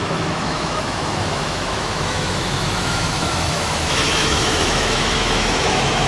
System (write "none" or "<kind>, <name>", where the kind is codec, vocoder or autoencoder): autoencoder, DAC-VAE